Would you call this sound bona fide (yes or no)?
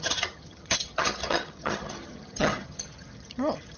no